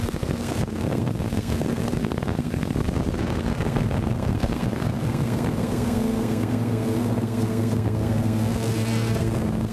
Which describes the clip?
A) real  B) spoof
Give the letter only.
B